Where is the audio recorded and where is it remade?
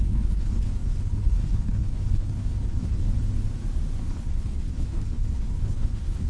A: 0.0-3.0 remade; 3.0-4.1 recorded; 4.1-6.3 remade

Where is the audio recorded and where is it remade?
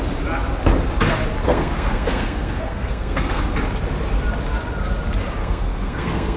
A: 0.0-1.4 recorded; 1.4-3.4 remade; 3.4-5.4 recorded; 5.4-6.4 remade